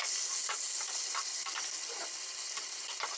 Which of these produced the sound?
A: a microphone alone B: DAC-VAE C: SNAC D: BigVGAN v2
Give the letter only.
A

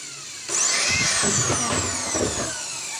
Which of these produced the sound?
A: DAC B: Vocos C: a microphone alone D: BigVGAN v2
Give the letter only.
C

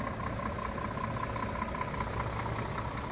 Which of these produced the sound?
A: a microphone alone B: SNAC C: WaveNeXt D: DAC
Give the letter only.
A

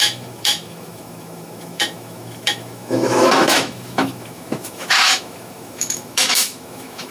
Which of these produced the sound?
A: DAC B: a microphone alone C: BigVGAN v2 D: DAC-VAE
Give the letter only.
D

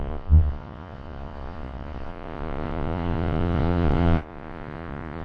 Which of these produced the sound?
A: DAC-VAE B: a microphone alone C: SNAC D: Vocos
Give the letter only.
D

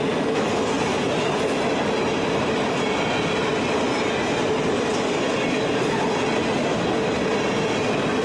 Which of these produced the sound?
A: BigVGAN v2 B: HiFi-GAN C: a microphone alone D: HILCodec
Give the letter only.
C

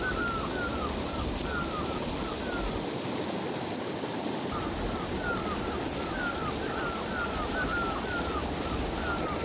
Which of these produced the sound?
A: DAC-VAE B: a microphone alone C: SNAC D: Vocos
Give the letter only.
B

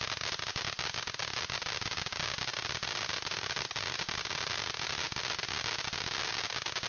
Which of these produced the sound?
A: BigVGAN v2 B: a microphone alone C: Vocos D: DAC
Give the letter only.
B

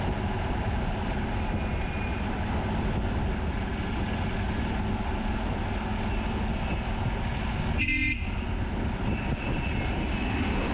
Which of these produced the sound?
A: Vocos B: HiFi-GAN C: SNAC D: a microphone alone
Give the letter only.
D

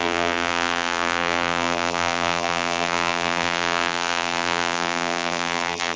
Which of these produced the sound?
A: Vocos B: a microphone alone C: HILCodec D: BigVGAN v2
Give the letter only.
D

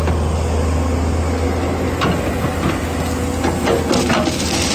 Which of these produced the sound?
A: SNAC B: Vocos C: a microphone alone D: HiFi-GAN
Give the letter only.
C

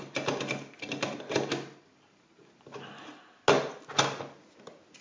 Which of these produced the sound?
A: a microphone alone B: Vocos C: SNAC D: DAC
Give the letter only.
A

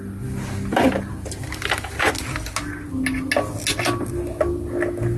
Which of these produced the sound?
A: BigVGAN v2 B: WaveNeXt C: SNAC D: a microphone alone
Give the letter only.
D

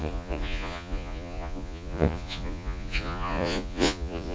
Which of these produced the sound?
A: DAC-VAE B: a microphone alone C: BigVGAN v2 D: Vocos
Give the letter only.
D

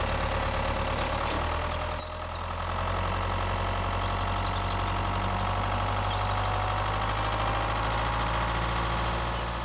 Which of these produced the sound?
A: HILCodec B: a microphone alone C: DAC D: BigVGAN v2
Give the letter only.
B